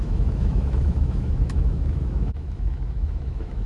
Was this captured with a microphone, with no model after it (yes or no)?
no